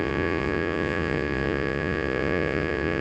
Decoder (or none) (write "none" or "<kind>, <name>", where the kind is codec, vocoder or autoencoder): vocoder, Vocos